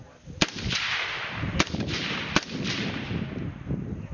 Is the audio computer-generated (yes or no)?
yes